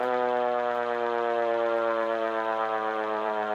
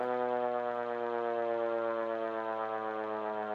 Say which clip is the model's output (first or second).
first